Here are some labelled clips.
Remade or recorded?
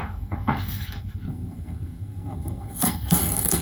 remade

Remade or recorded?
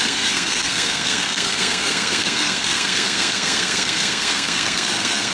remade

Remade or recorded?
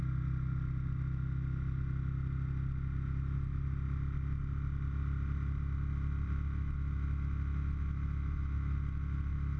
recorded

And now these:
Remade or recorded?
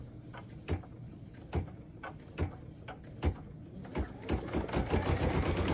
recorded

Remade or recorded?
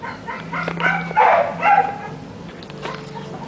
recorded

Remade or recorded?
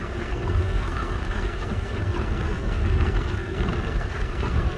remade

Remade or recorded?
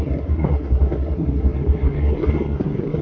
remade